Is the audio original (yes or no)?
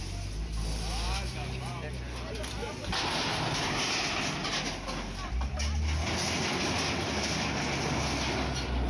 yes